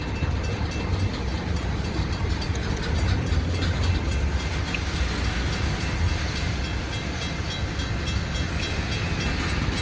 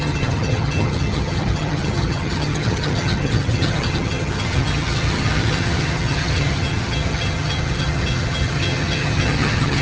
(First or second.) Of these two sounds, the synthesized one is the second